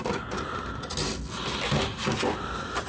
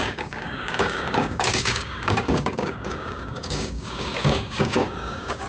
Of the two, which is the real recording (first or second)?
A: first